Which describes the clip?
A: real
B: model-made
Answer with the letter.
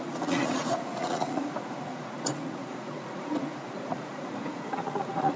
B